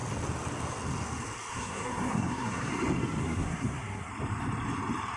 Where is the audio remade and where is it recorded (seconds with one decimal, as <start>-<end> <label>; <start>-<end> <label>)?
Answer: 0.0-1.5 recorded; 1.5-2.7 remade; 2.7-3.2 recorded; 3.2-4.1 remade; 4.1-5.2 recorded